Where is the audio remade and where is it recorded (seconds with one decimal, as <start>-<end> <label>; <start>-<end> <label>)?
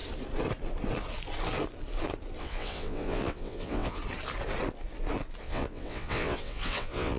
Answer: 0.0-2.4 recorded; 2.4-4.0 remade; 4.0-5.4 recorded; 5.4-7.2 remade